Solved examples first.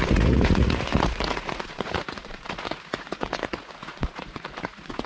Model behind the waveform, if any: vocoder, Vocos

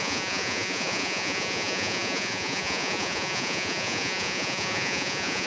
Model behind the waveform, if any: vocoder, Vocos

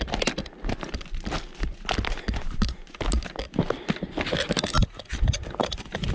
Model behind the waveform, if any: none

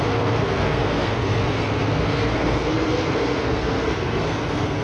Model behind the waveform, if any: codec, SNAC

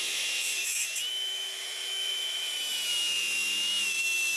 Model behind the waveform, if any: autoencoder, DAC-VAE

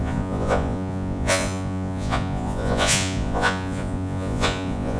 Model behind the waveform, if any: vocoder, Vocos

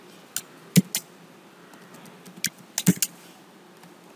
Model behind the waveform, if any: none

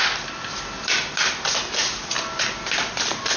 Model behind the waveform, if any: none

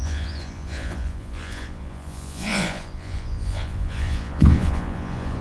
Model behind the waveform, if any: vocoder, Vocos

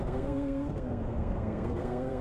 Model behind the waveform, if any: codec, SNAC